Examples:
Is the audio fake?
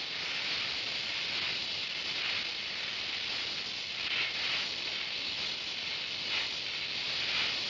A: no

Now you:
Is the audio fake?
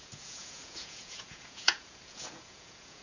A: yes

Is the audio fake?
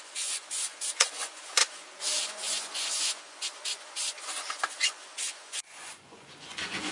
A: yes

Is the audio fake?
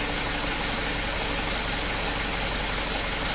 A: no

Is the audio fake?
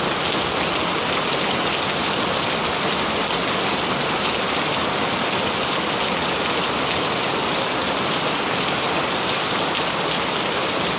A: no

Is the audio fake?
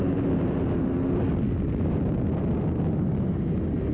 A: no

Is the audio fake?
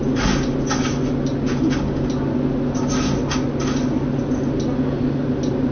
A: no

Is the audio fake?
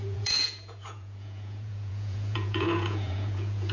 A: yes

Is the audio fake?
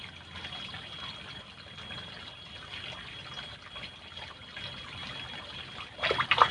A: no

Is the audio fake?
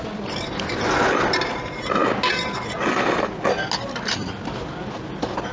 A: no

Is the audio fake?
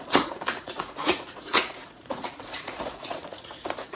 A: yes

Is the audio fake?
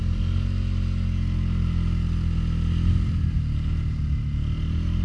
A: no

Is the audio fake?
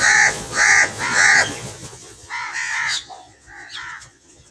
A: yes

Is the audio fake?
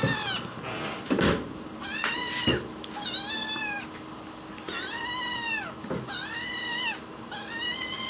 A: no